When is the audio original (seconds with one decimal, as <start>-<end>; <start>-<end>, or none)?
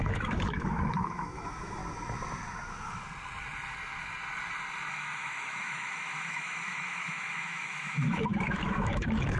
1.8-4.9